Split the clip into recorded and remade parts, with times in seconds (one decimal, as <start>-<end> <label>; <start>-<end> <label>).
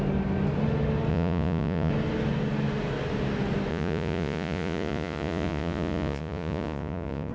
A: 0.0-1.1 recorded; 1.1-1.9 remade; 1.9-3.7 recorded; 3.7-7.3 remade